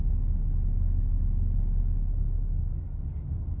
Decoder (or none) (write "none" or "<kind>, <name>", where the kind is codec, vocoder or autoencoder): none